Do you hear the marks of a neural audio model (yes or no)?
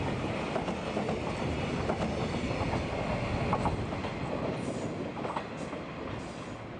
no